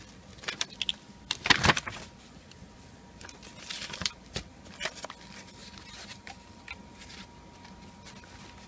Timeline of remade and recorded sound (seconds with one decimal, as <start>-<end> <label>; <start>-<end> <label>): 0.0-5.6 recorded; 5.6-6.6 remade; 6.6-8.7 recorded